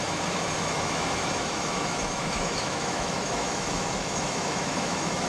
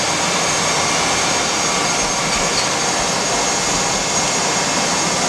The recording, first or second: second